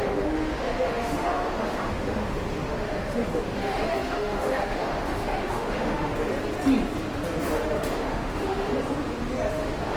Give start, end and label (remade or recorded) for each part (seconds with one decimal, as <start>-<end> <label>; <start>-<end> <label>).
0.0-6.3 remade; 6.3-7.5 recorded; 7.5-8.7 remade; 8.7-9.5 recorded; 9.5-10.0 remade